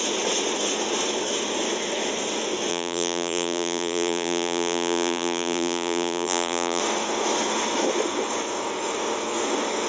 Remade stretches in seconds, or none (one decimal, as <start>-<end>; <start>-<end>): 2.7-6.8